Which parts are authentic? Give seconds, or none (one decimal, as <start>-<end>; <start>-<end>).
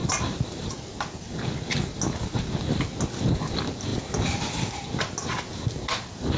0.0-6.4